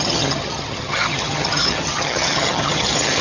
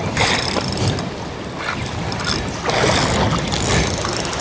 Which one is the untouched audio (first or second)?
second